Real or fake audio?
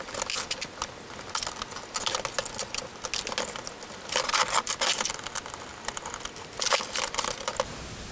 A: real